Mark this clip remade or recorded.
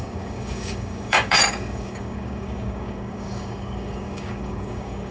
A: remade